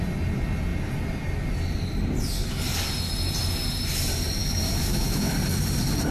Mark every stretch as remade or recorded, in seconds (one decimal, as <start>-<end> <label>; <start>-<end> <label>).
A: 0.0-4.4 recorded; 4.4-5.3 remade; 5.3-6.1 recorded